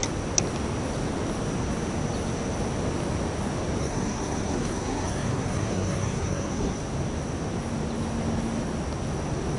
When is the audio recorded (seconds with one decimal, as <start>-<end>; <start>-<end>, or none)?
0.0-3.8; 6.8-9.6

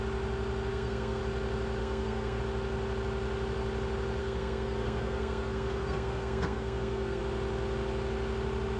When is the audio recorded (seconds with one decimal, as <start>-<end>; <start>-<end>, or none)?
0.0-0.7; 1.2-1.8; 2.4-4.2; 7.2-8.8